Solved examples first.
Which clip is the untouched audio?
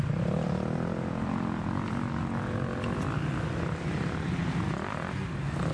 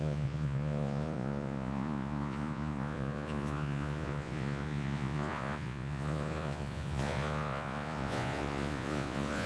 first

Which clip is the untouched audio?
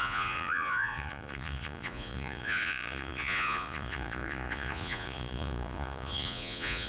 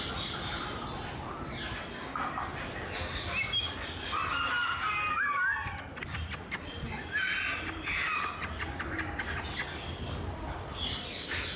second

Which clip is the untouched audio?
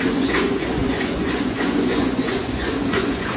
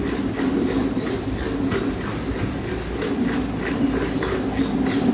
second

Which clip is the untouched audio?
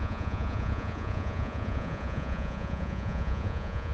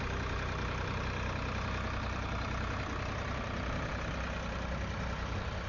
second